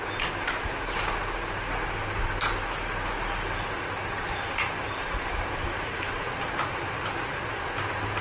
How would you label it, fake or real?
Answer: real